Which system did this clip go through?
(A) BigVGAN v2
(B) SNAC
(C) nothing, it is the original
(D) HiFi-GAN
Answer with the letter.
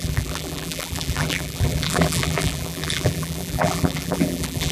A